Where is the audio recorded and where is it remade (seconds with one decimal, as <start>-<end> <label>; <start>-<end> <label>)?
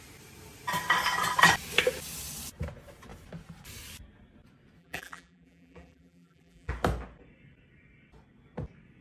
0.0-4.8 recorded; 4.8-6.7 remade; 6.7-9.0 recorded